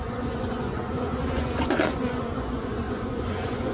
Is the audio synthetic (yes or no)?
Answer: yes